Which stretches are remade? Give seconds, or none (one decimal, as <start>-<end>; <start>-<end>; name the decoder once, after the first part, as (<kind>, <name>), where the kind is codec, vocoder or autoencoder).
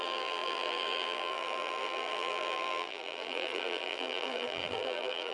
0.0-5.3 (vocoder, BigVGAN v2)